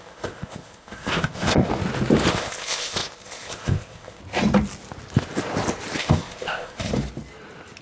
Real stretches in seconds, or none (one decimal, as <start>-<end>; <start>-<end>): 1.7-2.3; 4.2-6.0; 6.9-7.8